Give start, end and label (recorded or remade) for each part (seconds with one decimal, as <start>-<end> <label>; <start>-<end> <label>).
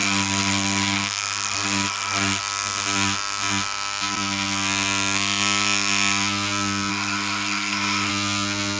0.0-2.4 remade; 2.4-6.9 recorded; 6.9-8.1 remade; 8.1-8.8 recorded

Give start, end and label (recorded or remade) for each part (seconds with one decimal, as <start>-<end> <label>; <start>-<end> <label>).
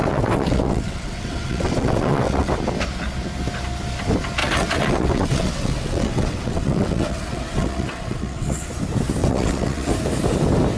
0.0-2.5 remade; 2.5-4.4 recorded; 4.4-8.7 remade; 8.7-9.2 recorded; 9.2-9.9 remade; 9.9-10.8 recorded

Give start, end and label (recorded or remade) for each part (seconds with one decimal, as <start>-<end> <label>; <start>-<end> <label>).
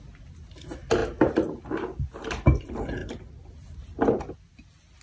0.0-5.0 recorded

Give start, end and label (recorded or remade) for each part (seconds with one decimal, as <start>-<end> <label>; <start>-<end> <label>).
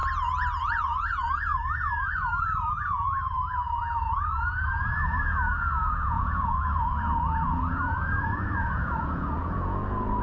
0.0-0.6 recorded; 0.6-10.2 remade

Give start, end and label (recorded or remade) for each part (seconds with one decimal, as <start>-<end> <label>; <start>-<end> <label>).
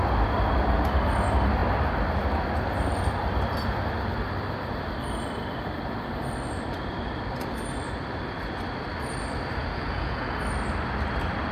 0.0-9.6 recorded; 9.6-10.4 remade; 10.4-11.5 recorded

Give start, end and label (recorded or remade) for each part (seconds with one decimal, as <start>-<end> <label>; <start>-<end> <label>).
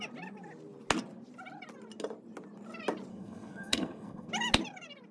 0.0-3.1 recorded; 3.1-4.3 remade; 4.3-5.1 recorded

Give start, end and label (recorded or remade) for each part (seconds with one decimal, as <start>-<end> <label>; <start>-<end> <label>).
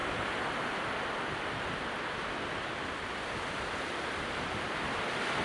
0.0-5.4 recorded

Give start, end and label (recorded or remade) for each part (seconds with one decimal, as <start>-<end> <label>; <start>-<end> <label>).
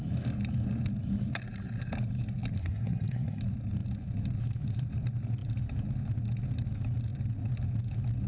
0.0-2.6 recorded; 2.6-3.4 remade; 3.4-8.3 recorded